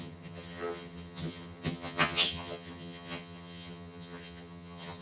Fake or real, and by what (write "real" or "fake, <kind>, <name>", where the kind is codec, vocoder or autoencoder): fake, vocoder, HiFi-GAN